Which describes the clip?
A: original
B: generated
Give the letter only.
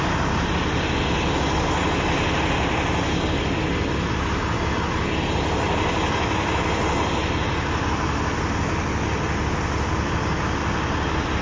A